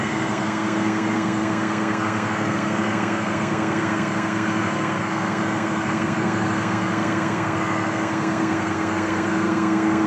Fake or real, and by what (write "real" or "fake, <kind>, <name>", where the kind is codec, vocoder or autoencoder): fake, codec, SNAC